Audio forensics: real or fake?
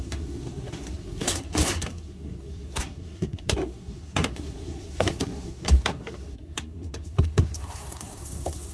fake